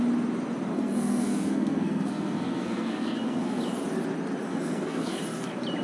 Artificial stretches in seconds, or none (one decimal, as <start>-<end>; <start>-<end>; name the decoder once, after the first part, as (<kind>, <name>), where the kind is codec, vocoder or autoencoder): 0.7-3.6 (codec, SNAC); 4.5-5.2